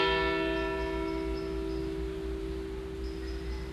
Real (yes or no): yes